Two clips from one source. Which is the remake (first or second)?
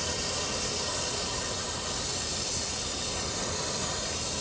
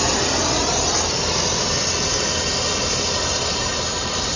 first